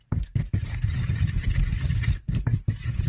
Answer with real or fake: fake